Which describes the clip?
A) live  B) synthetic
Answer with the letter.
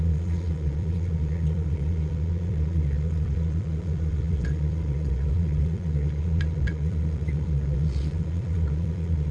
B